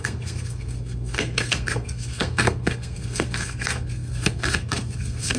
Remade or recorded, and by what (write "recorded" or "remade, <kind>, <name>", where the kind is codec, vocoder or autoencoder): remade, codec, SNAC